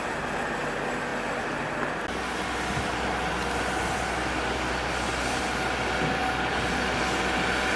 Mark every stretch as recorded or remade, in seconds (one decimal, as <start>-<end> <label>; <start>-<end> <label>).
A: 0.0-7.8 recorded